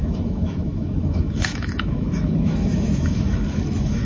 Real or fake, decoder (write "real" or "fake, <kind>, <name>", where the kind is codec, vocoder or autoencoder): fake, autoencoder, DAC-VAE